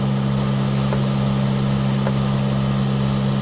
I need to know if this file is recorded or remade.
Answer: recorded